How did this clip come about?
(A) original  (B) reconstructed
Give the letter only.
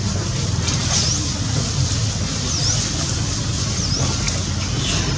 A